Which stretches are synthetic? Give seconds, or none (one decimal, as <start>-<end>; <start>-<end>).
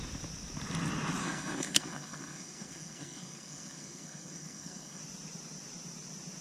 1.2-5.0